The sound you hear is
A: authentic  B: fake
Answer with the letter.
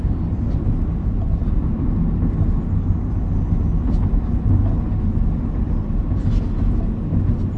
A